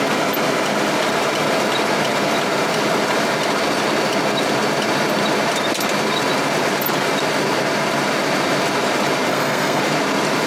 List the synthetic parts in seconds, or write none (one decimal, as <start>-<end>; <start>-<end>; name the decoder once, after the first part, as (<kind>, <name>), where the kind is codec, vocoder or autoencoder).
9.3-9.8 (codec, SNAC)